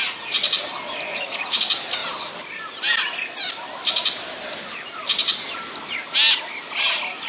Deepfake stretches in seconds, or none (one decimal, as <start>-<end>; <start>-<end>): 1.1-1.6